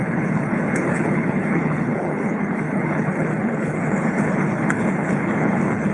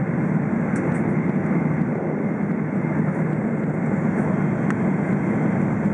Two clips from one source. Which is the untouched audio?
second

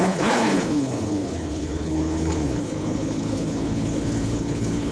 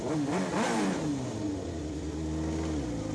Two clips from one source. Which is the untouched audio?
second